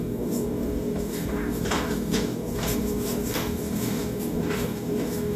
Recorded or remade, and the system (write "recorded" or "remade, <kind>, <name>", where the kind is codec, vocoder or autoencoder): remade, codec, DAC